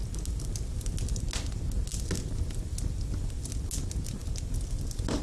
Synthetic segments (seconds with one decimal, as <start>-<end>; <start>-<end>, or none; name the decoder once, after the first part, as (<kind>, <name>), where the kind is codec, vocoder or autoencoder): none